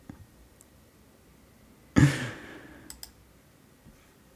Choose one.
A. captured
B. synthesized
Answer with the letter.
A